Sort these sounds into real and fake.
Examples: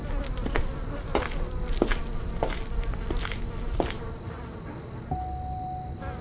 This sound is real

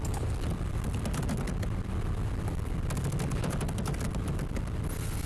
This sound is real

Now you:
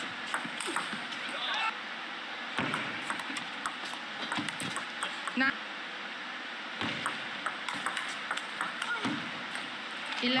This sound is real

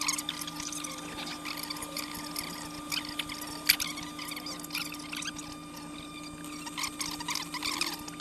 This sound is real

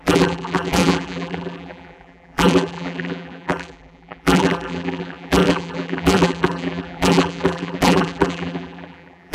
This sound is fake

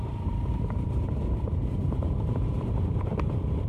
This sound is fake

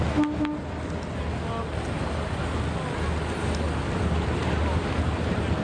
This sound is real